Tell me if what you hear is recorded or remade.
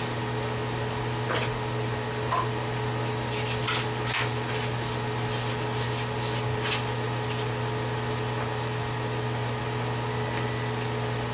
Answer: recorded